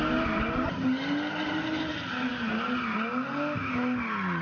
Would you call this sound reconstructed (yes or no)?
no